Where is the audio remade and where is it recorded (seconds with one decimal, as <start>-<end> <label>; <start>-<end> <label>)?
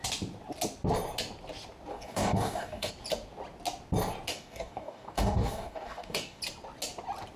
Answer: 0.0-1.9 recorded; 1.9-2.9 remade; 2.9-4.3 recorded; 4.3-6.4 remade; 6.4-7.4 recorded